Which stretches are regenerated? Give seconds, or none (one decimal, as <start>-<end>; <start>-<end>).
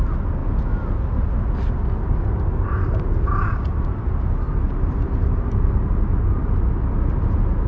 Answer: none